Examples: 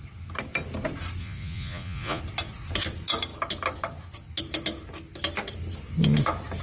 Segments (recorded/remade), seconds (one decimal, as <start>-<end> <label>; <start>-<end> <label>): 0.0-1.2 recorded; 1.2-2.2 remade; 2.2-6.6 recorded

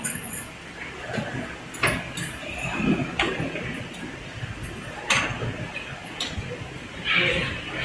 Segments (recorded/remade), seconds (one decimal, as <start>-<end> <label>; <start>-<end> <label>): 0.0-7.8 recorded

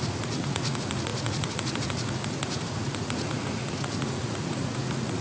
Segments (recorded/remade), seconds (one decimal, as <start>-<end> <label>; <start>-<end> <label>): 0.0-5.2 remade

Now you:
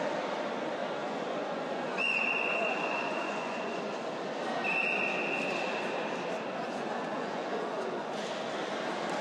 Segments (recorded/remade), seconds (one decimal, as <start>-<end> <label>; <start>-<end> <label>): 0.0-1.0 recorded; 1.0-3.8 remade; 3.8-6.6 recorded; 6.6-8.2 remade; 8.2-9.2 recorded

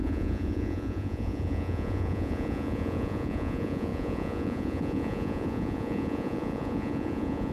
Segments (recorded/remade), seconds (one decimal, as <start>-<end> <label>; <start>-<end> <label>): 0.0-7.5 remade